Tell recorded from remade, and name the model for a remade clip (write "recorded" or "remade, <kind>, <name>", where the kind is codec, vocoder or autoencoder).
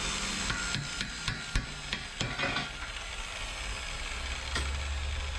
recorded